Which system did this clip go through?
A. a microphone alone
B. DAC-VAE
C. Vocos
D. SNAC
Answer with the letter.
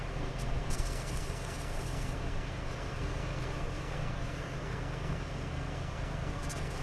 D